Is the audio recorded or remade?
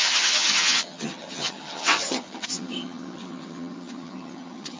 remade